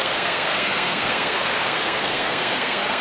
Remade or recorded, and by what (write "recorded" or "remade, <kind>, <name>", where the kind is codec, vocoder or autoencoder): remade, codec, SNAC